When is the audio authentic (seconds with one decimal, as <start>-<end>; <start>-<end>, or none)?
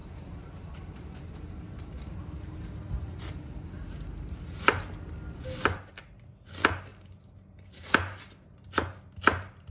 4.6-6.9; 7.9-9.7